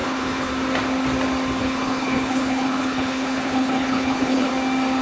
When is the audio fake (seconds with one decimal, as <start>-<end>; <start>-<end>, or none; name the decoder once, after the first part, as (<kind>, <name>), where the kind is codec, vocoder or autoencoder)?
0.0-0.5 (codec, HILCodec); 1.6-4.5